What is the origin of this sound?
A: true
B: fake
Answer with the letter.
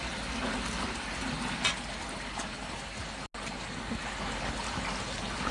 A